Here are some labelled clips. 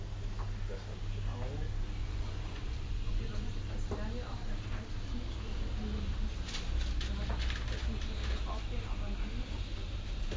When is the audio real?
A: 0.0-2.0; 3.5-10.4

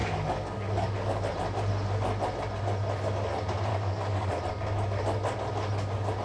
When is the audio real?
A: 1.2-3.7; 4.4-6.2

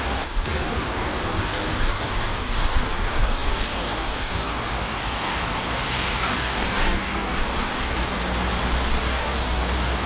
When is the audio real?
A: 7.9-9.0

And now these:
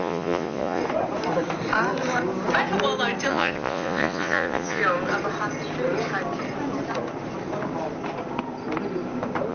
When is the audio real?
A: 0.8-3.3; 4.8-9.5